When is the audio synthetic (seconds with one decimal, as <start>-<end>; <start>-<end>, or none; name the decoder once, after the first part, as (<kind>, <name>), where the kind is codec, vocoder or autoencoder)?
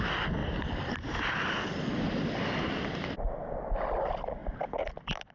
none